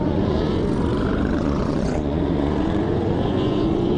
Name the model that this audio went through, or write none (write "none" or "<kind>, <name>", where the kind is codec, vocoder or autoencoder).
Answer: vocoder, Vocos